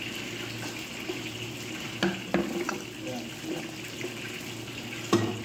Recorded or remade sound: recorded